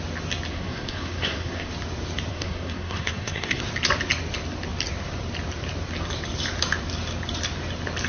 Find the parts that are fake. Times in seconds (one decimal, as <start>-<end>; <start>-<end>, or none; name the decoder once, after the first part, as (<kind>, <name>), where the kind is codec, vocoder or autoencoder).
0.5-1.7 (codec, SNAC); 2.3-3.6